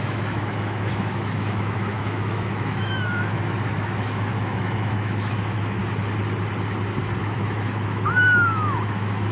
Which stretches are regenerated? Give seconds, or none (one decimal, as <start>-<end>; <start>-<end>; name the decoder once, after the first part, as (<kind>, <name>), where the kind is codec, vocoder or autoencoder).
0.0-5.8 (autoencoder, DAC-VAE); 7.2-9.3